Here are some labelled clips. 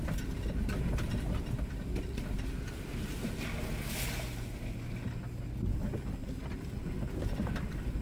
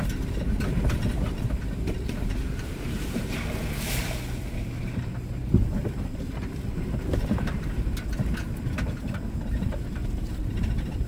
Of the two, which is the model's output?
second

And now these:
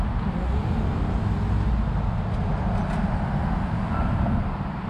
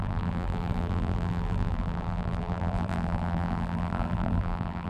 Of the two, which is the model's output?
second